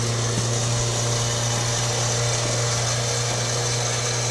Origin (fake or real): real